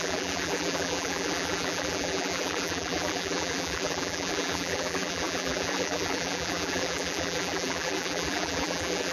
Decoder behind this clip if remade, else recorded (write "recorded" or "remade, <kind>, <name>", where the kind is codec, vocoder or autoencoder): remade, vocoder, BigVGAN v2